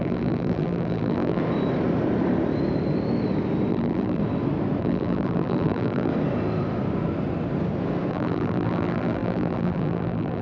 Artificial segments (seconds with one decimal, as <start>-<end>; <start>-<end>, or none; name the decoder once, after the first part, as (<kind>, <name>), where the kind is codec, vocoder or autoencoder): 0.0-1.4 (vocoder, BigVGAN v2); 3.7-4.2; 4.8-6.1; 8.1-10.4